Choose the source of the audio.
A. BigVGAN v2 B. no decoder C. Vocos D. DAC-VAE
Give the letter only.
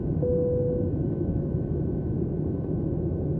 D